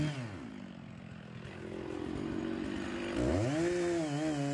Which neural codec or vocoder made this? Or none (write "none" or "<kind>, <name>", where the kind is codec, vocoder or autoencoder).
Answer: none